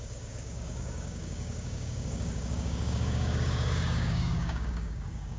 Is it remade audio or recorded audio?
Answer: remade